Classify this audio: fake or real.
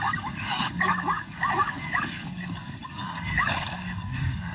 fake